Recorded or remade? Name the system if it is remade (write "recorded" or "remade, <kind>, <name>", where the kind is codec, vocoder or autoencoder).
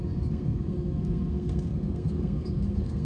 remade, codec, SNAC